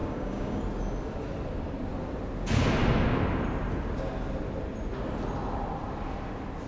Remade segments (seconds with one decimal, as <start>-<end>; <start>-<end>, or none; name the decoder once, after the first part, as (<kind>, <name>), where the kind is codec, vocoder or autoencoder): 0.0-0.6 (codec, DAC)